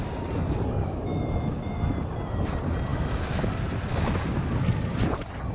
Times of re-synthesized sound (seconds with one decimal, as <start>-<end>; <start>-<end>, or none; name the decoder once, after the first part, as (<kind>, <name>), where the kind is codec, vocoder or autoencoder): 0.8-1.9 (autoencoder, DAC-VAE); 2.9-3.5